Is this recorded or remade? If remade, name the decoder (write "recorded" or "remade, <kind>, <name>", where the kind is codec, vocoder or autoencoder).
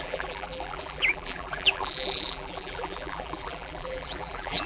remade, vocoder, BigVGAN v2